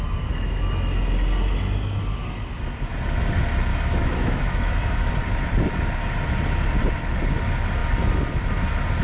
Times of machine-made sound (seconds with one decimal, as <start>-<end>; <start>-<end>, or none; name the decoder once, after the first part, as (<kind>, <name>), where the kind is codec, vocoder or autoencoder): 3.7-5.1 (autoencoder, DAC-VAE)